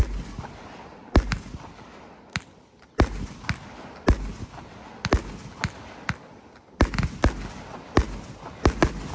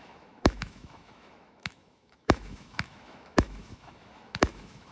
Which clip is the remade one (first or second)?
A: second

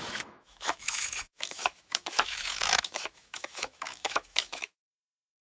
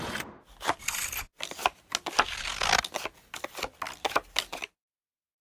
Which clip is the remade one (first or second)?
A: first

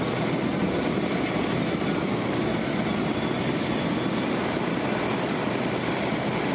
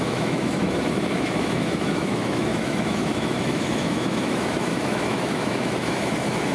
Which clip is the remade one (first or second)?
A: second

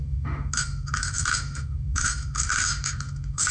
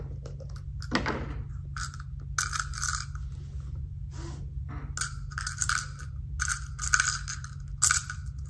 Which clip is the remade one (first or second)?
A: first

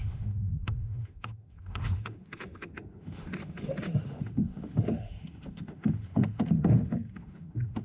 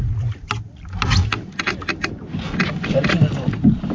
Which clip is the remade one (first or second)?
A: first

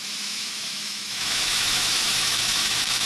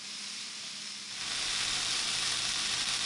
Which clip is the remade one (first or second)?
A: first